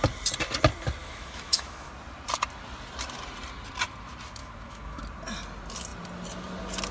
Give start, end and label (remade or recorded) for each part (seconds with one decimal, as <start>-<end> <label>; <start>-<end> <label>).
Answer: 0.0-1.0 recorded; 1.0-1.9 remade; 1.9-4.4 recorded; 4.4-5.0 remade; 5.0-6.9 recorded